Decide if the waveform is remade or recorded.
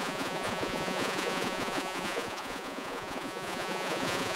remade